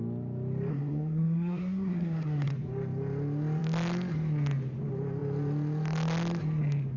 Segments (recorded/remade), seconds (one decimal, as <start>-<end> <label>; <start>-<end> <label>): 0.0-0.7 recorded; 0.7-2.5 remade; 2.5-7.0 recorded